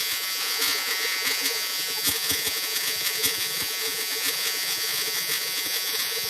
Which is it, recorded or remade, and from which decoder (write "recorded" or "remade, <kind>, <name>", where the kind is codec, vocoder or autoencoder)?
remade, vocoder, Vocos